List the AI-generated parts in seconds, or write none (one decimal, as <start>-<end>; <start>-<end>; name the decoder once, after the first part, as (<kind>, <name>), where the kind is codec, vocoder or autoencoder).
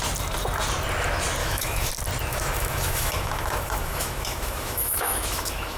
1.4-1.9 (autoencoder, DAC-VAE); 2.3-5.8